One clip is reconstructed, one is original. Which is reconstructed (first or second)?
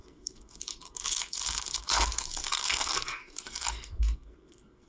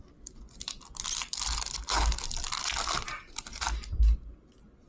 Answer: first